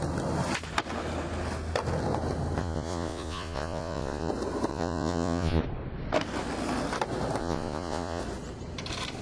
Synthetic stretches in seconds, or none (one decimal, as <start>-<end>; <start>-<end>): 2.6-4.3; 4.7-5.6; 7.4-8.2